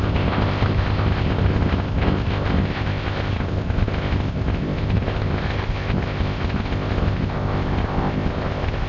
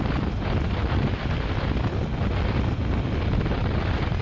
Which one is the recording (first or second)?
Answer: second